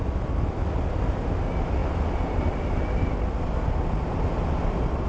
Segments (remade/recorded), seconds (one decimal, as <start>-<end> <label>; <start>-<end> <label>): 0.0-5.1 recorded